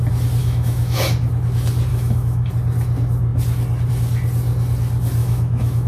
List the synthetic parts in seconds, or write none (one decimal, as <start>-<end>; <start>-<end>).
0.4-1.0; 1.9-2.5; 5.2-5.9